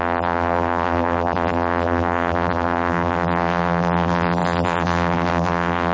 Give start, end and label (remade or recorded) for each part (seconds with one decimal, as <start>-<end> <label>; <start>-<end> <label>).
0.0-5.9 remade